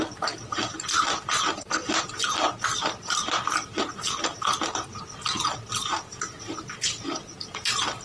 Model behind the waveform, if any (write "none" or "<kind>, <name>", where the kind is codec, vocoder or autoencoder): none